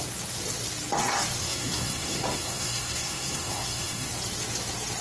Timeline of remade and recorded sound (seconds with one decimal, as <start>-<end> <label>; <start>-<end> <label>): 0.0-1.4 recorded; 1.4-4.1 remade; 4.1-5.0 recorded